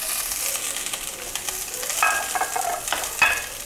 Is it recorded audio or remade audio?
recorded